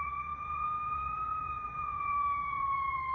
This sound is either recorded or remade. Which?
remade